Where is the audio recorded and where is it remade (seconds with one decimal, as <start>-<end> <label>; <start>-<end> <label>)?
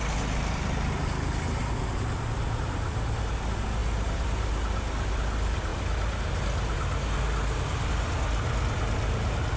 0.0-9.6 recorded